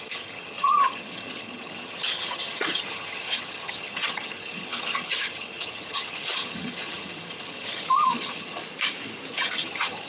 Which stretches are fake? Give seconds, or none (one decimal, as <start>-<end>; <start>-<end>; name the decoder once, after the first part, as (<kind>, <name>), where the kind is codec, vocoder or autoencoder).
0.0-8.6 (vocoder, HiFi-GAN); 9.3-10.1